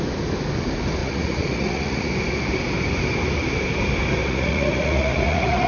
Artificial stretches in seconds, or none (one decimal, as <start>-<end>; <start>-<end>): 1.0-2.1; 4.2-5.7